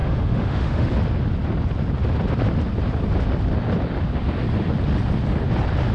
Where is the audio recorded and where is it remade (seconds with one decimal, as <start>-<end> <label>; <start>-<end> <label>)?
0.0-0.9 remade; 0.9-5.9 recorded